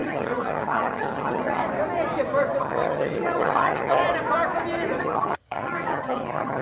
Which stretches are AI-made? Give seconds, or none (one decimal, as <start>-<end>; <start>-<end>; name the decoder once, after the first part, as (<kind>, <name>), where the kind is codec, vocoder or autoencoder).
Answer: 0.0-1.6 (vocoder, HiFi-GAN); 2.6-4.0; 5.0-6.6